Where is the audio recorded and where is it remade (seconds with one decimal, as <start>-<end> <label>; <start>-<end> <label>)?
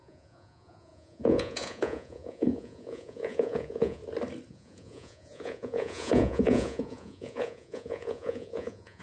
0.0-4.0 remade; 4.0-4.5 recorded; 4.5-9.0 remade